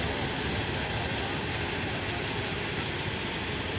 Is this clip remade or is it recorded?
recorded